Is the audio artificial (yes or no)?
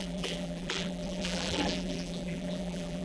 yes